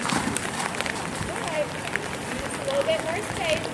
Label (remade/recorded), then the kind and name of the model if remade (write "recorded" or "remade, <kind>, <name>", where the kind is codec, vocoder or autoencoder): remade, vocoder, BigVGAN v2